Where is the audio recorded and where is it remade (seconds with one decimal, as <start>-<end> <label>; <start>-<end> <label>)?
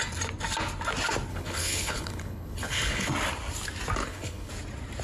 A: 0.0-1.3 recorded; 1.3-3.1 remade; 3.1-4.0 recorded; 4.0-4.5 remade; 4.5-5.0 recorded